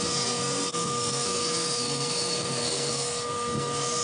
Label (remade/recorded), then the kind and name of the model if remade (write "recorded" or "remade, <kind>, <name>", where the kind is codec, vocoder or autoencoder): remade, codec, SNAC